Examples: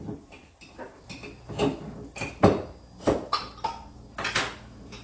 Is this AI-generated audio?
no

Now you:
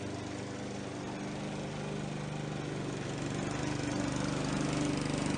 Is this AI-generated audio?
no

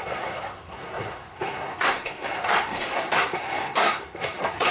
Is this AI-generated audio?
yes